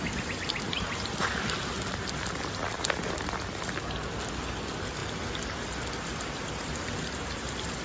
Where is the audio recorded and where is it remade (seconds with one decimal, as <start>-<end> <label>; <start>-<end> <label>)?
0.0-7.8 recorded